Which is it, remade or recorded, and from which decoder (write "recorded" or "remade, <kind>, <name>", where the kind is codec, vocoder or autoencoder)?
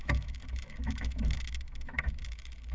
remade, autoencoder, DAC-VAE